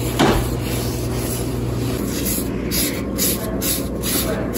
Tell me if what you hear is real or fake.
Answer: real